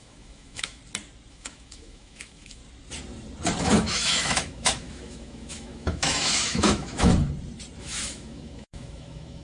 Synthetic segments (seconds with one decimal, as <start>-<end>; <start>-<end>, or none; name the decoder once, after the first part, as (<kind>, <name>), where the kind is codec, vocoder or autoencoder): 0.0-0.8 (autoencoder, DAC-VAE); 1.3-2.6; 3.6-7.1; 7.8-9.4